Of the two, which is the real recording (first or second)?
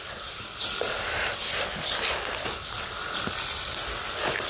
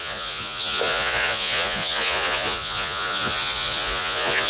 first